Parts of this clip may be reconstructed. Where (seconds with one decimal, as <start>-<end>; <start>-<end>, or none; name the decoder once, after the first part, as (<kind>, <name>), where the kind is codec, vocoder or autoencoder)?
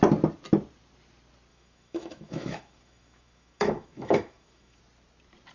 1.5-4.8 (autoencoder, DAC-VAE)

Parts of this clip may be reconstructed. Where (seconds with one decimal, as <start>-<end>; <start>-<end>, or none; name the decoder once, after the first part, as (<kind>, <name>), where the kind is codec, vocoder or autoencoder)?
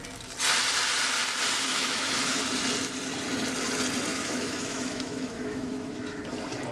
1.7-2.4 (autoencoder, DAC-VAE); 4.1-6.2